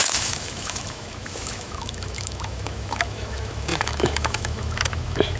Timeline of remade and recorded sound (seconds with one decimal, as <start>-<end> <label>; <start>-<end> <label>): 0.0-5.4 remade